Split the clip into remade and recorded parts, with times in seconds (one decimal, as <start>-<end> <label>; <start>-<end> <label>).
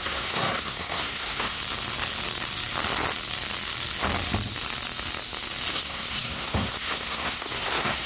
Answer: 0.0-1.6 remade; 1.6-5.7 recorded; 5.7-8.1 remade